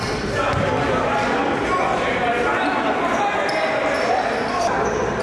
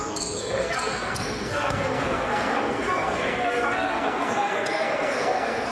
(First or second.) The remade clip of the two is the second